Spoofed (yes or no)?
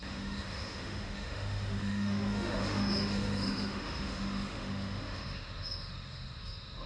yes